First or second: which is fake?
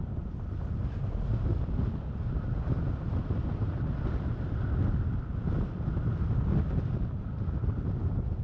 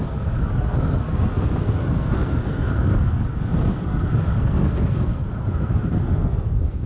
second